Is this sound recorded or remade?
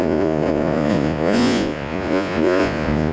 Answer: remade